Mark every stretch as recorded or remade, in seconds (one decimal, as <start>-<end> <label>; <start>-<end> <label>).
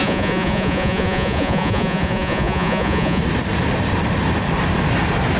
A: 0.0-3.2 remade; 3.2-5.4 recorded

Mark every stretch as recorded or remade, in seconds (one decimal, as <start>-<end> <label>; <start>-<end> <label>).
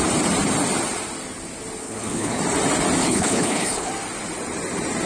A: 0.0-1.8 recorded; 1.8-2.4 remade; 2.4-3.0 recorded; 3.0-3.9 remade; 3.9-5.1 recorded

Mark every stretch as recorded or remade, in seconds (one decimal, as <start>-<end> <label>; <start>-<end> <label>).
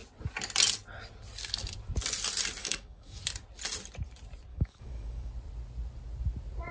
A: 0.0-2.6 recorded; 2.6-3.2 remade; 3.2-4.5 recorded; 4.5-5.3 remade; 5.3-6.7 recorded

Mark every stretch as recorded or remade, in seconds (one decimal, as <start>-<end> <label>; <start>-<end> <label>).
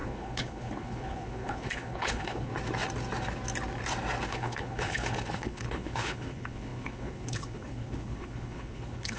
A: 0.0-2.5 remade; 2.5-4.3 recorded; 4.3-9.2 remade